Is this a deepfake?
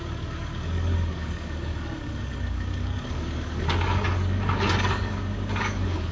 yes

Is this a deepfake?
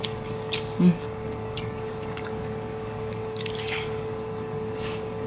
yes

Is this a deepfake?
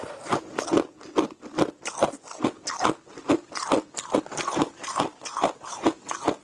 no